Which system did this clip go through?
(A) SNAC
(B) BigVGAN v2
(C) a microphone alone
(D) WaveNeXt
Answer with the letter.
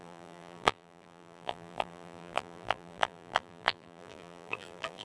B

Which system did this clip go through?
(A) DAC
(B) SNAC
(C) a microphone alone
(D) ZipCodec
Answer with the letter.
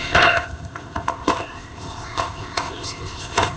D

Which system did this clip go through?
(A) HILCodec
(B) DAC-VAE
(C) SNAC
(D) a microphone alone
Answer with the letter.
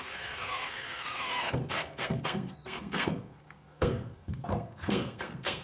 C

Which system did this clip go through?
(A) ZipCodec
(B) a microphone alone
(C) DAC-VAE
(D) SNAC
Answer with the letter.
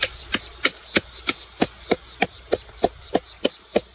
B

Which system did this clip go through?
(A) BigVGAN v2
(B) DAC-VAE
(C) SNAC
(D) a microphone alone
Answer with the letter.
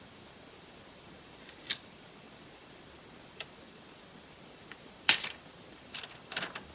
A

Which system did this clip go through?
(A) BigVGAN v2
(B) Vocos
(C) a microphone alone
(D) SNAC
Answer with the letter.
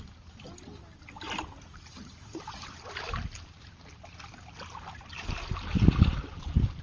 C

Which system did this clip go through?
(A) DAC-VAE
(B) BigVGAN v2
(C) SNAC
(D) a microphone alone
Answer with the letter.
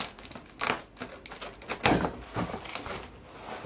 D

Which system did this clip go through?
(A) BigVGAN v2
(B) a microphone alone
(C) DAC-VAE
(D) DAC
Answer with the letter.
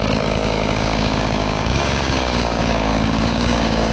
D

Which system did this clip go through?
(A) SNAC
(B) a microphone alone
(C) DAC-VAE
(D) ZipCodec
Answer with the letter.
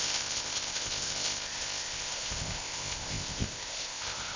D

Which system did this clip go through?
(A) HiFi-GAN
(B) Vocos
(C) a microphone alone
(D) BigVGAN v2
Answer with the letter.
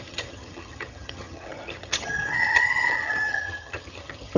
A